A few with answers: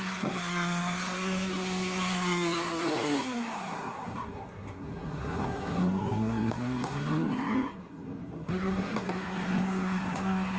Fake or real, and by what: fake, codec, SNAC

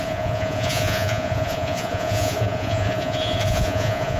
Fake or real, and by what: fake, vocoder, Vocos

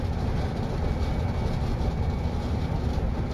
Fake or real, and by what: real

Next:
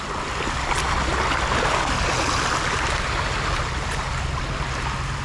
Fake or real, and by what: real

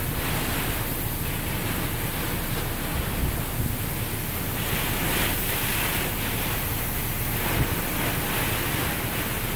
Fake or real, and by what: real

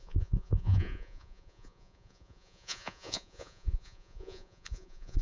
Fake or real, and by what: fake, vocoder, Vocos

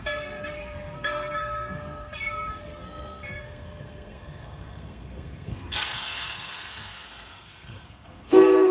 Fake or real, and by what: fake, codec, SNAC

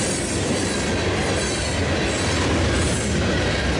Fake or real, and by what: real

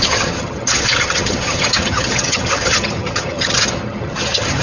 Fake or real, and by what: fake, vocoder, HiFi-GAN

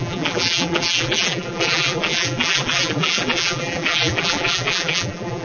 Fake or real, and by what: fake, vocoder, BigVGAN v2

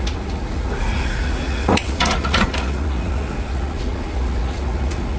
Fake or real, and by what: fake, vocoder, Vocos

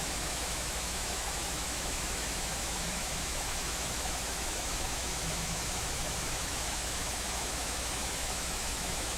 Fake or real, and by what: fake, autoencoder, DAC-VAE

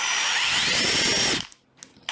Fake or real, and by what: real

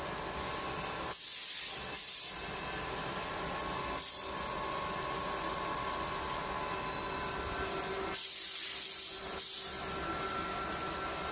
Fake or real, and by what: real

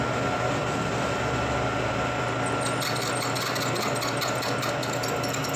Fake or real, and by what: real